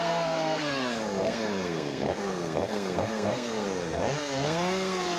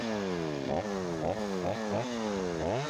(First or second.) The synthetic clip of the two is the first